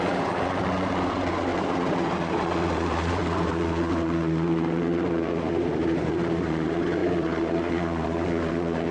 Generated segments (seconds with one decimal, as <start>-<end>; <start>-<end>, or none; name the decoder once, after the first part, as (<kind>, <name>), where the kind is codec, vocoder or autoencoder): 0.0-8.9 (vocoder, Vocos)